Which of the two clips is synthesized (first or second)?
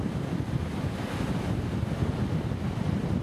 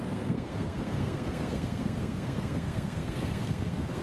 second